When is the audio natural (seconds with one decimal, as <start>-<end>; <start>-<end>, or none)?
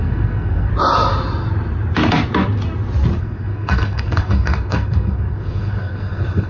0.7-3.2